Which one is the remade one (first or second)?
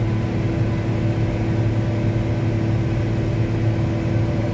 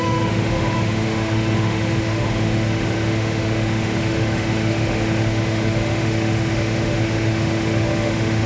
second